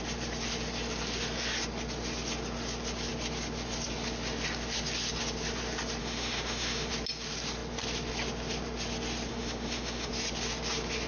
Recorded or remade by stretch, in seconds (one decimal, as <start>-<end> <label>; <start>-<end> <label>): 0.0-6.0 recorded; 6.0-6.9 remade; 6.9-9.3 recorded; 9.3-10.1 remade; 10.1-11.1 recorded